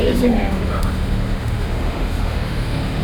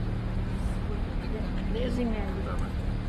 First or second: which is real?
second